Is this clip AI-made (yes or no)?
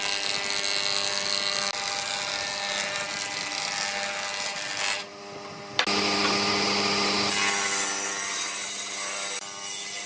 no